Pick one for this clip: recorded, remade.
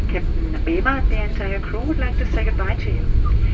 recorded